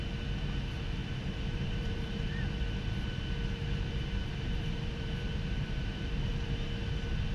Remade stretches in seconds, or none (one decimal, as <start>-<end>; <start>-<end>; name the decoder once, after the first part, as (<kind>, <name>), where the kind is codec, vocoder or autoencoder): 1.0-2.5 (vocoder, BigVGAN v2); 4.2-5.9